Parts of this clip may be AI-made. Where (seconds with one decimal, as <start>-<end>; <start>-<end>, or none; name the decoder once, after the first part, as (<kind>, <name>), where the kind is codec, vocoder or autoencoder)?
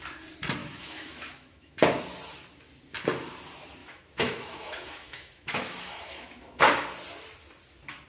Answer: 0.6-2.0 (autoencoder, DAC-VAE); 3.8-6.6